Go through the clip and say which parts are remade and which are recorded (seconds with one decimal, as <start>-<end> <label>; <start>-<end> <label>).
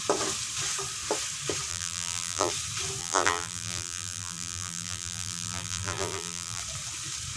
0.0-1.7 recorded; 1.7-2.5 remade; 2.5-3.0 recorded; 3.0-6.6 remade; 6.6-7.4 recorded